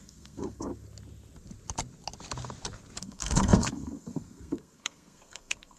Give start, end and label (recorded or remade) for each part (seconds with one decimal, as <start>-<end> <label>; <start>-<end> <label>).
0.0-0.7 remade; 0.7-3.0 recorded; 3.0-5.8 remade